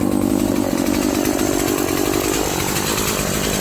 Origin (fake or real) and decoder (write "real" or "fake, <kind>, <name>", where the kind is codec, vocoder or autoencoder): real